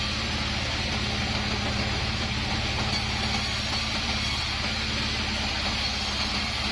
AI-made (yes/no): no